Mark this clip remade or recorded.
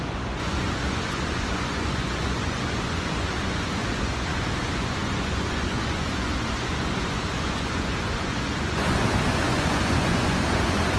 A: remade